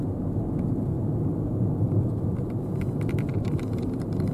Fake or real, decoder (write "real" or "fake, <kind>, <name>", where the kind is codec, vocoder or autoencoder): real